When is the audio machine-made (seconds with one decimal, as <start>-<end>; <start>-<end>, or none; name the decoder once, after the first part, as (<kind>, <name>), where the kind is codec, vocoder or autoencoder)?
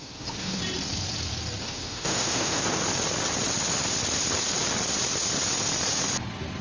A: 0.0-0.6 (autoencoder, DAC-VAE); 1.6-2.6